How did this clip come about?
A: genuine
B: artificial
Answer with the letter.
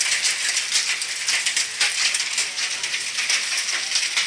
A